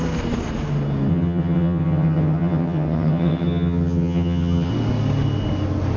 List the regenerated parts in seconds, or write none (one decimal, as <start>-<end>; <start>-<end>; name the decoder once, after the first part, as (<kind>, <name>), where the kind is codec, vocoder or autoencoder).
1.1-4.7 (vocoder, HiFi-GAN)